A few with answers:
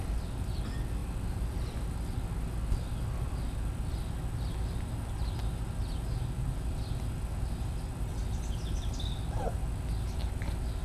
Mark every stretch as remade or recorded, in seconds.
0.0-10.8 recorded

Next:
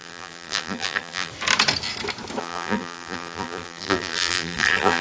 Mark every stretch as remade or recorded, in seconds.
0.0-1.3 remade; 1.3-2.4 recorded; 2.4-5.0 remade

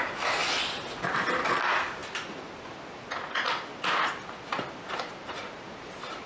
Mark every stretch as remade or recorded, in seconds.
0.0-3.7 recorded; 3.7-6.3 remade

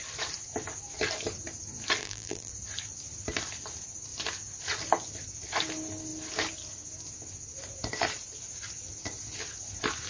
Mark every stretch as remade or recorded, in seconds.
0.0-2.0 recorded; 2.0-2.5 remade; 2.5-10.1 recorded

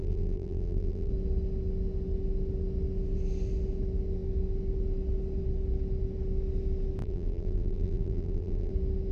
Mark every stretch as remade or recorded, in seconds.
0.0-1.1 remade; 1.1-7.0 recorded; 7.0-8.7 remade; 8.7-9.1 recorded